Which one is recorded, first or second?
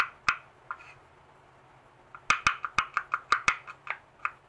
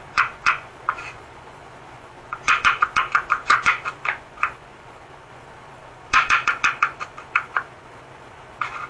first